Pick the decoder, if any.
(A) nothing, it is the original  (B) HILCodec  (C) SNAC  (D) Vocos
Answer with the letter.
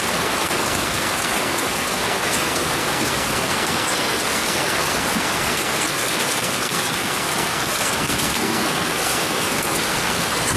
C